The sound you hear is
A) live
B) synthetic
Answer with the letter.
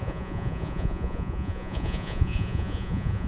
B